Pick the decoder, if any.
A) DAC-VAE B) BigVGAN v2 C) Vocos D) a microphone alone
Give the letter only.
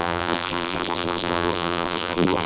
B